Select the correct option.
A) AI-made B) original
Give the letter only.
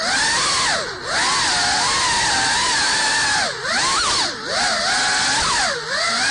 B